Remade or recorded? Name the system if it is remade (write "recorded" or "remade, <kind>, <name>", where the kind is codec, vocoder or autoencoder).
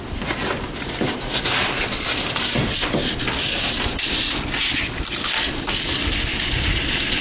recorded